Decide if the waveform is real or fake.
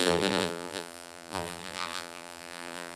fake